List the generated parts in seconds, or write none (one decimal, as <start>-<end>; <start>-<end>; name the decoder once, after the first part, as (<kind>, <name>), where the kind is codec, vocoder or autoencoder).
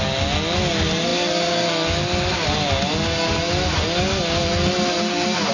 none